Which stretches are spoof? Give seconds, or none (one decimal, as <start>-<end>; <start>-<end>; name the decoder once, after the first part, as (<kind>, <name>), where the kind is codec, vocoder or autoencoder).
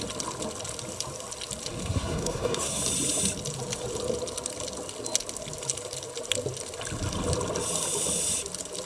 1.8-2.8 (codec, SNAC)